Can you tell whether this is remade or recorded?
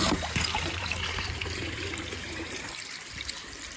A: remade